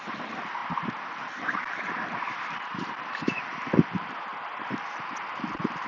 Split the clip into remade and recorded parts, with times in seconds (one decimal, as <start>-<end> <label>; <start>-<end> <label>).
0.0-4.3 remade; 4.3-5.5 recorded; 5.5-5.9 remade